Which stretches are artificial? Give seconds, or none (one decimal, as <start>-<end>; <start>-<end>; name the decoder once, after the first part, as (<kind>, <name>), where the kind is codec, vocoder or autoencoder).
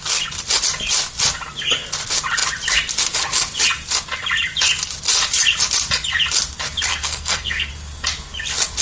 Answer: 6.9-7.7 (codec, SNAC)